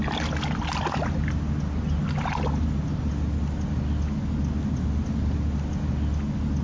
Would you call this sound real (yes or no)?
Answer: yes